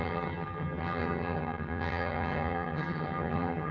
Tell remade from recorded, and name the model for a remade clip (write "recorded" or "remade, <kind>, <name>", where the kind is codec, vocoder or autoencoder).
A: remade, vocoder, HiFi-GAN